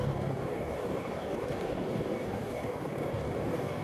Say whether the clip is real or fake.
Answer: fake